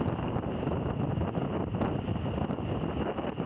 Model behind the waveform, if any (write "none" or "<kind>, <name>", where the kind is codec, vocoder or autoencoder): none